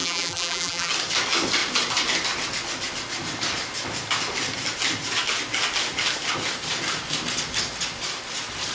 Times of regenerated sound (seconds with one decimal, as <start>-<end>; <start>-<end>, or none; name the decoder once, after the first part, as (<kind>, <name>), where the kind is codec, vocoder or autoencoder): 0.0-0.9 (vocoder, BigVGAN v2)